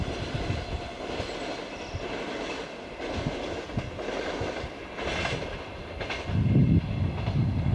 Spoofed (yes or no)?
no